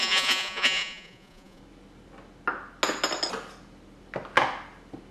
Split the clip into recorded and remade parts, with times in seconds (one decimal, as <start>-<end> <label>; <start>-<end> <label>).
0.0-1.6 remade; 1.6-5.1 recorded